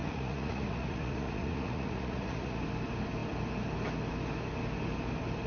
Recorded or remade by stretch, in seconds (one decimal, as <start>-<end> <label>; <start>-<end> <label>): 0.0-2.6 remade; 2.6-5.5 recorded